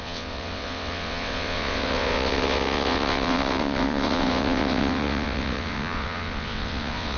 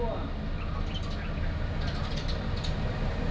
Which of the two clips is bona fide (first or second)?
second